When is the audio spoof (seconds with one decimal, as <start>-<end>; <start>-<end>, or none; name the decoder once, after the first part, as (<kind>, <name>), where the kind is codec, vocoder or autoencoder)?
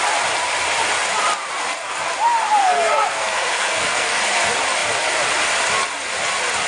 2.6-4.2 (codec, SNAC)